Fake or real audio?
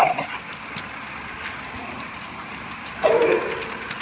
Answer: real